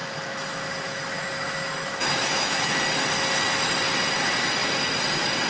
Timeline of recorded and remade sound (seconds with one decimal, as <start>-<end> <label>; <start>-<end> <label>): 0.0-3.0 remade; 3.0-5.5 recorded